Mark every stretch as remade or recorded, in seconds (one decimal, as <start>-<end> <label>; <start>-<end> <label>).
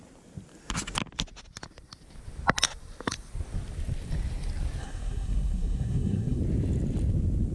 0.0-4.8 recorded; 4.8-6.4 remade; 6.4-7.5 recorded